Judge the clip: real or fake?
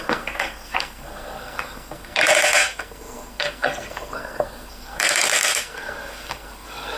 fake